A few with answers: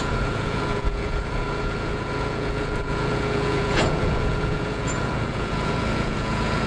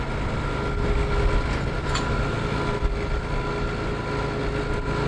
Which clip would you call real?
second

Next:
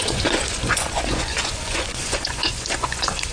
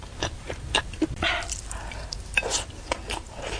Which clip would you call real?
second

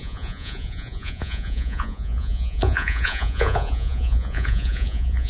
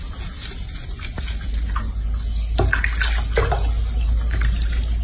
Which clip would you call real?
second